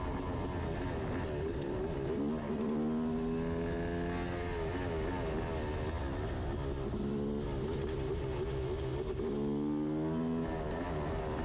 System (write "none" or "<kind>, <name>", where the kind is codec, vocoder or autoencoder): none